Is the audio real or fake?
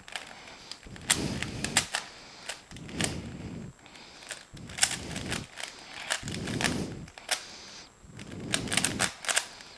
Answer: real